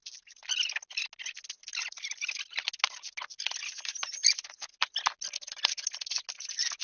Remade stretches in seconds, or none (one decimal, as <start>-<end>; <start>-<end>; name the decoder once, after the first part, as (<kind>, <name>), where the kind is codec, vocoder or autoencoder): none